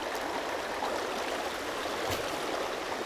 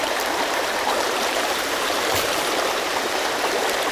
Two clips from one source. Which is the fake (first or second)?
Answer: second